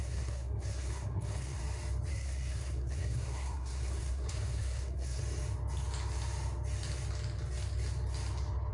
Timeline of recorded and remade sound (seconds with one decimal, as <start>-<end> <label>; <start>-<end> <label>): 0.0-1.6 remade; 1.6-2.1 recorded; 2.1-5.2 remade; 5.2-8.7 recorded